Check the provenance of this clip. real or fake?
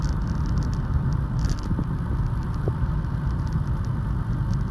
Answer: real